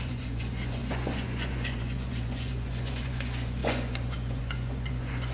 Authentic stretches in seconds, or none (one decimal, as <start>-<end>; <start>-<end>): none